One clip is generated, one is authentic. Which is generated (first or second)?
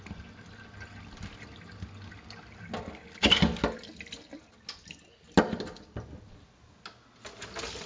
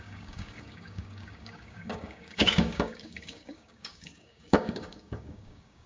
second